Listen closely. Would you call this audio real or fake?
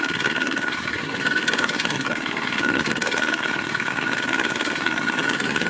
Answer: fake